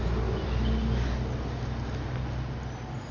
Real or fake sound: real